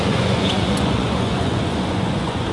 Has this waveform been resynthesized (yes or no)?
yes